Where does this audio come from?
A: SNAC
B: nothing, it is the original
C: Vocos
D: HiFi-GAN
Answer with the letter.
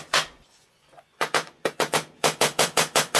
C